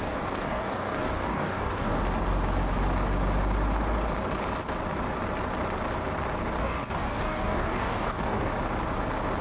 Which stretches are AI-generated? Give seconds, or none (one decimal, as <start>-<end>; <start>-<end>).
0.0-2.0; 6.6-8.5